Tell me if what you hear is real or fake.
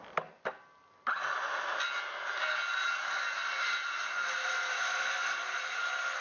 real